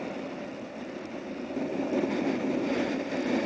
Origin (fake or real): real